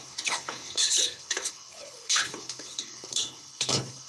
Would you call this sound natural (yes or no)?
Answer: no